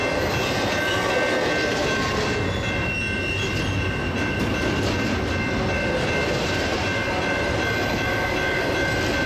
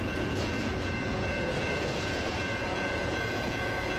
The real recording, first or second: first